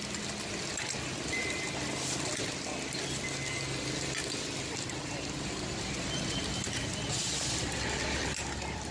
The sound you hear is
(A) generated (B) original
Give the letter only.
B